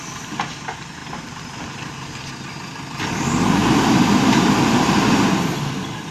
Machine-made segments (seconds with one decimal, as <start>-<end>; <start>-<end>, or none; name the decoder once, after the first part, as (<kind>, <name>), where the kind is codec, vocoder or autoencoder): 3.6-4.2 (vocoder, BigVGAN v2)